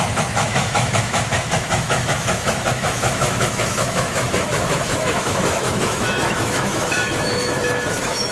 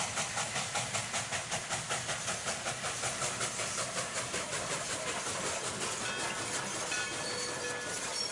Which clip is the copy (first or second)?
first